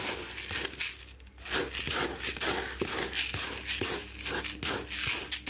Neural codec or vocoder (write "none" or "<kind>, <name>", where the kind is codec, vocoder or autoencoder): none